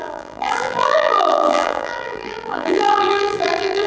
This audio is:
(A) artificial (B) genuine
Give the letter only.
A